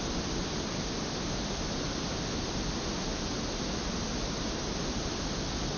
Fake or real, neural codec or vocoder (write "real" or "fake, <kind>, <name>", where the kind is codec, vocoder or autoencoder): real